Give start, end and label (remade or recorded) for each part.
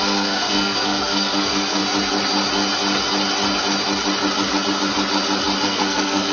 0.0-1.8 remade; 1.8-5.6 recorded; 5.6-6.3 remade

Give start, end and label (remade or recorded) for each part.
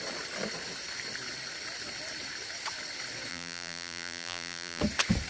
0.0-3.3 recorded; 3.3-4.8 remade; 4.8-5.3 recorded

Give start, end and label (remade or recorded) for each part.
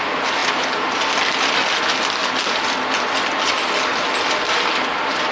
0.0-5.3 recorded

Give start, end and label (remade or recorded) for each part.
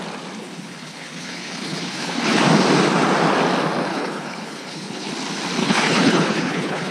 0.0-0.4 recorded; 0.4-2.4 remade; 2.4-3.9 recorded; 3.9-5.1 remade; 5.1-5.6 recorded; 5.6-6.9 remade